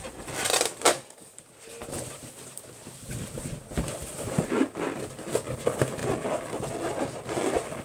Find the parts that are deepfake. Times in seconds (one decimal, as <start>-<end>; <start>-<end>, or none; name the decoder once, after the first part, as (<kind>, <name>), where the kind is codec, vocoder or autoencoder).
0.9-1.4 (codec, DAC)